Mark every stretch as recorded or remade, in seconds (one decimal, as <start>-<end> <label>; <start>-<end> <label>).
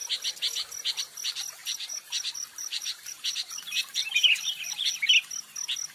0.0-1.6 recorded; 1.6-5.1 remade; 5.1-5.9 recorded